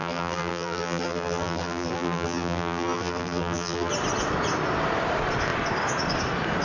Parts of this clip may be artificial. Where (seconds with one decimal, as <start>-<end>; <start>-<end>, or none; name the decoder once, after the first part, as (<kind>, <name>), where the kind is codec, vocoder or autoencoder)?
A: 0.0-3.9 (vocoder, BigVGAN v2)